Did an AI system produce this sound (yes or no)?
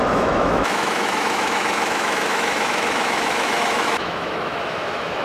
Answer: yes